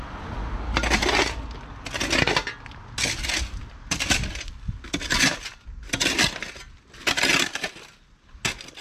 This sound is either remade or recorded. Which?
recorded